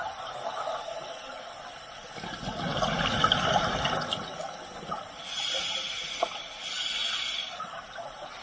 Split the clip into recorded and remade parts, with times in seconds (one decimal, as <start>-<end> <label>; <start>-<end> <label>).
0.0-8.4 recorded